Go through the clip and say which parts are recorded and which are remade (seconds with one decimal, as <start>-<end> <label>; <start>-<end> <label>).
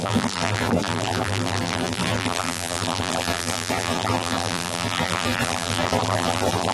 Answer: 0.0-6.7 remade